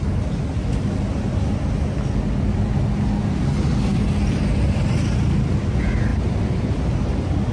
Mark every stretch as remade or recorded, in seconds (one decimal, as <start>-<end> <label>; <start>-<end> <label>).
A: 0.0-7.5 recorded